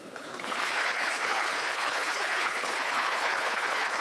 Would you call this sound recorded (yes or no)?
no